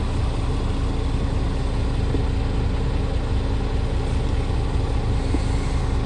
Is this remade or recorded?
recorded